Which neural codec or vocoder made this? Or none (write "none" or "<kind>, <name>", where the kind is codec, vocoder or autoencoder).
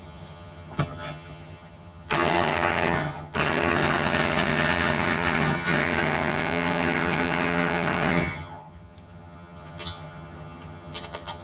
vocoder, HiFi-GAN